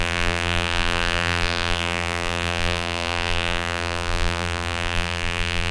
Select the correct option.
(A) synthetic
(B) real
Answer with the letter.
A